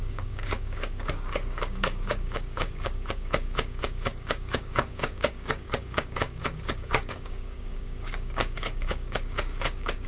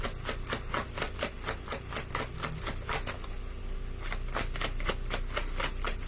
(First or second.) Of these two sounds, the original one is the second